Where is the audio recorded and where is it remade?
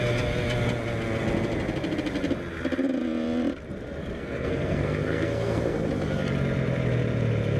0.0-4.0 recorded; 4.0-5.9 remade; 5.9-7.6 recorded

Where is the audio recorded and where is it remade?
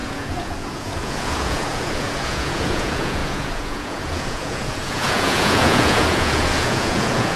0.0-7.4 remade